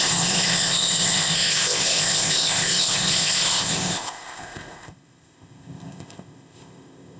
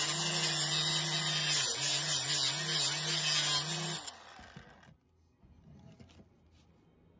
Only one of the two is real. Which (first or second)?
second